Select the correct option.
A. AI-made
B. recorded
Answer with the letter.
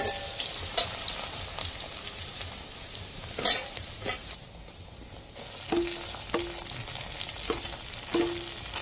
B